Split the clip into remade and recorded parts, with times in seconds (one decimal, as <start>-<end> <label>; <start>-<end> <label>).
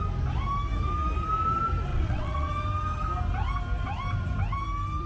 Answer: 0.0-1.9 recorded; 1.9-2.5 remade; 2.5-5.1 recorded